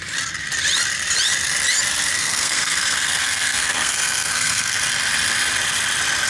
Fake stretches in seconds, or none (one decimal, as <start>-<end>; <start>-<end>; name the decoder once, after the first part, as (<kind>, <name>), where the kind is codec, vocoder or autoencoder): 2.1-4.8 (codec, SNAC)